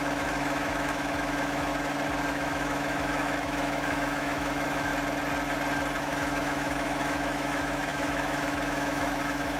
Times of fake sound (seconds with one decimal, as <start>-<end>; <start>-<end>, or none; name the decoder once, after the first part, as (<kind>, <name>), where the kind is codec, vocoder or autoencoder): 0.0-1.7 (autoencoder, DAC-VAE); 2.3-4.9; 6.0-9.6